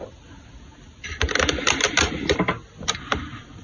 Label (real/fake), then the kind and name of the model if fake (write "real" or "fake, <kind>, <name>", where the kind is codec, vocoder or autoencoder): real